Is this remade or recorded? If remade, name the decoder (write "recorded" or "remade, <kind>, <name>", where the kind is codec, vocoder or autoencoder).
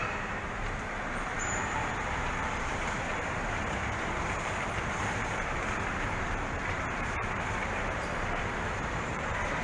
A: remade, vocoder, BigVGAN v2